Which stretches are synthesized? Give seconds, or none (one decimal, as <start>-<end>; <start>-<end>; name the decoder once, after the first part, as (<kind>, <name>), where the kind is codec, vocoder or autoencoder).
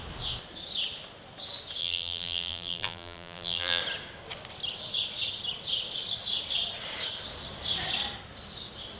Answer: 1.8-3.8 (vocoder, BigVGAN v2)